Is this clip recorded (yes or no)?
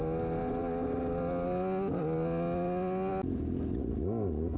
yes